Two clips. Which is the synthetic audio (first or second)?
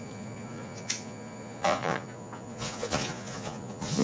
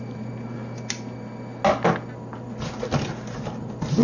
first